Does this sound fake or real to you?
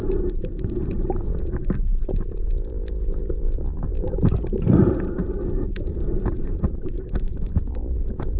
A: fake